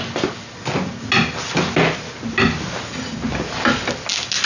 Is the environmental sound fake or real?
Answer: real